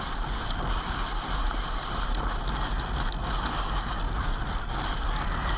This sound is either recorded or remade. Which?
recorded